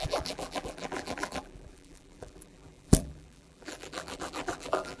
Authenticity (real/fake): fake